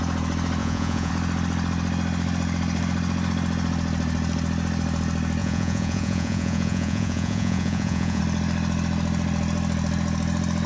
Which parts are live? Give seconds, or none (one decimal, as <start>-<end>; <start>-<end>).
0.0-0.6; 1.1-5.4; 8.2-10.7